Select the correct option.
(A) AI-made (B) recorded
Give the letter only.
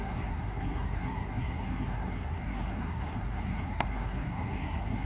A